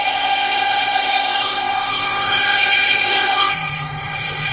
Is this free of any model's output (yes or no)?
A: no